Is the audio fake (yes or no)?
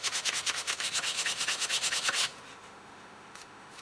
yes